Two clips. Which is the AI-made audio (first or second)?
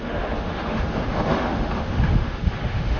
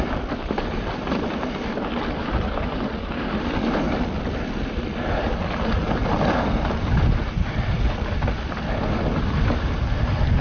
first